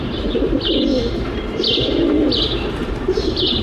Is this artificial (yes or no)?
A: yes